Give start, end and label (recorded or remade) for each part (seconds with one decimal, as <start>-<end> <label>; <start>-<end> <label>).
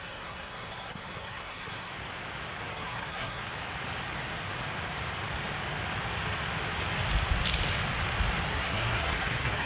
0.0-1.9 remade; 1.9-2.7 recorded; 2.7-3.4 remade; 3.4-8.5 recorded; 8.5-9.7 remade